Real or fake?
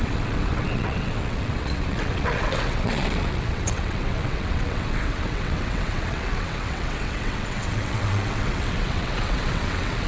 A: fake